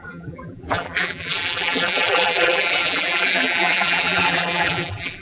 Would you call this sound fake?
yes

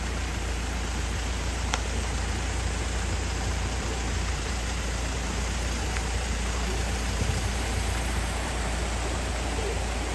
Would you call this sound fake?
yes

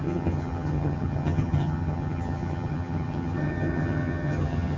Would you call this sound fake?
yes